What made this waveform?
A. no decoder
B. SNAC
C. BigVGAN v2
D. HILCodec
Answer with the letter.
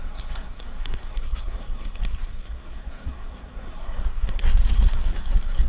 B